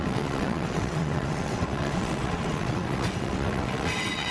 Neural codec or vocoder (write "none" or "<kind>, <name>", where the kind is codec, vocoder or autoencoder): vocoder, WaveNeXt